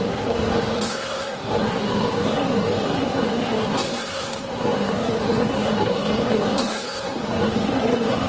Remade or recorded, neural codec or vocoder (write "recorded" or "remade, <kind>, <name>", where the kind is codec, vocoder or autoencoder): remade, codec, SNAC